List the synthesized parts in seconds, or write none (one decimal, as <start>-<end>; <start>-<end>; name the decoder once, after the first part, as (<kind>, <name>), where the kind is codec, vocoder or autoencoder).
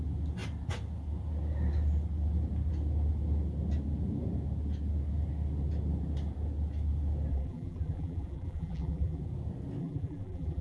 7.3-9.2 (vocoder, BigVGAN v2); 9.8-10.6